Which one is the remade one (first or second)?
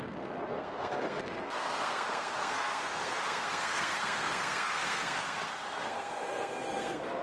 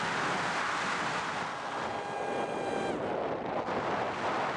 first